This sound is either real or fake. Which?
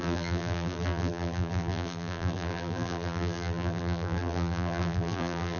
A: fake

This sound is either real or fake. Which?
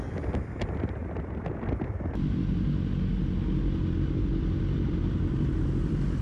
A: real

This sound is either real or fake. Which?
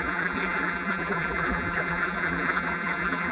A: fake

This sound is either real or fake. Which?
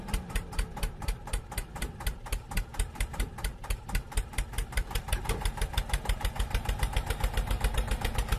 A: fake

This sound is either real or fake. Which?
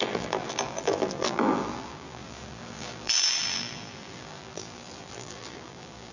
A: fake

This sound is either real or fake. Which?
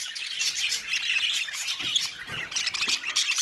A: fake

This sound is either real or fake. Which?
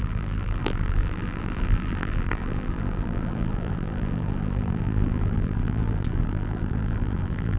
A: fake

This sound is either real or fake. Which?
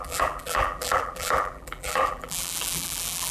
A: fake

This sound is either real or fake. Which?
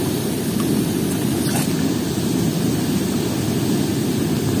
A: real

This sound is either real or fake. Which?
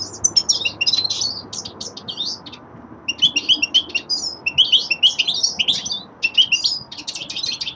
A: real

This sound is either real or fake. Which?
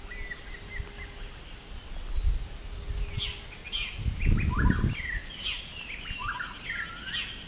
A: real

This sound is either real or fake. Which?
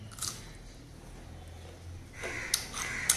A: real